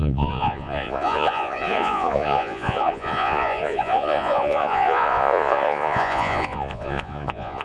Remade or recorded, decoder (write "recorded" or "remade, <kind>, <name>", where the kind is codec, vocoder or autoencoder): remade, vocoder, Vocos